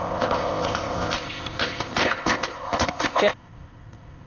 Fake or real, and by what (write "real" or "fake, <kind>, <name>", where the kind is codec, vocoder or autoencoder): fake, codec, ZipCodec